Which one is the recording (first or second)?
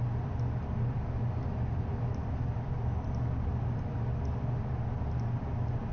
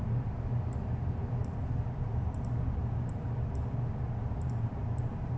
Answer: first